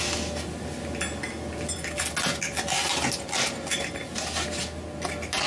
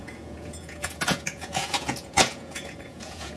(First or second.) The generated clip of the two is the second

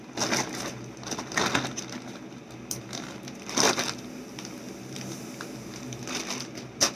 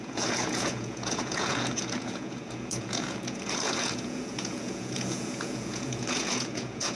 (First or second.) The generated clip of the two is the second